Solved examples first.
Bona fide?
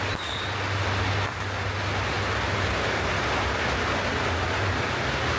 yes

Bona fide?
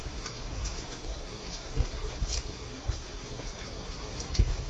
no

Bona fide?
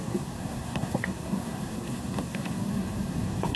no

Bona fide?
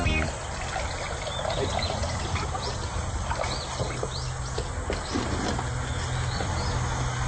yes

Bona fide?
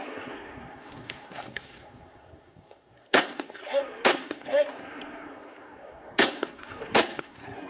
no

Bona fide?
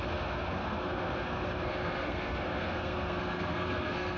no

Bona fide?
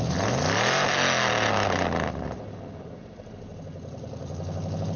yes